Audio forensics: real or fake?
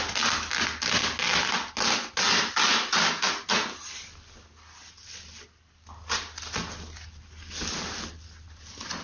real